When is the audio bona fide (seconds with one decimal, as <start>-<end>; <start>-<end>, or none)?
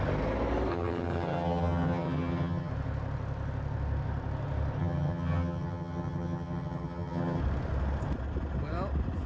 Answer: 0.0-0.7; 2.7-4.8; 7.4-9.3